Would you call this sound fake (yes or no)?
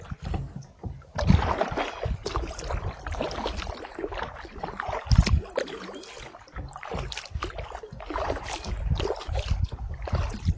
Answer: no